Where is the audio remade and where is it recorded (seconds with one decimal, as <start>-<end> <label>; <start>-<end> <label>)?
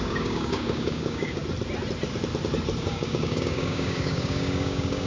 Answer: 0.0-1.4 remade; 1.4-2.8 recorded; 2.8-5.1 remade